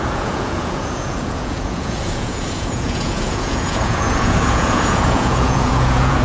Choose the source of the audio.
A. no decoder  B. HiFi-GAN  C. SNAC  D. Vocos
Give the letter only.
D